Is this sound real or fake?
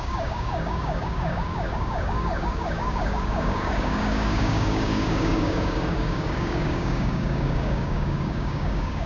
fake